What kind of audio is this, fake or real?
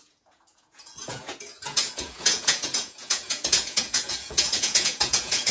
fake